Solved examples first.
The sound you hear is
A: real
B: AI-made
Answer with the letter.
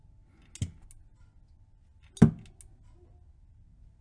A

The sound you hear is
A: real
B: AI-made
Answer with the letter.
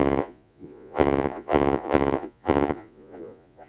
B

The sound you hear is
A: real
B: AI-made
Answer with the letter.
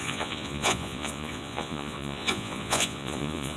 B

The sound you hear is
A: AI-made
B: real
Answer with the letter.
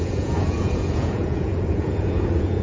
A